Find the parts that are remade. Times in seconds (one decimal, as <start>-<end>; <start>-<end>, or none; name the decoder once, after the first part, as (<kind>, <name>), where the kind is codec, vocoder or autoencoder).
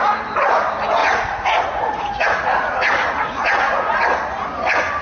1.0-4.0 (vocoder, Vocos)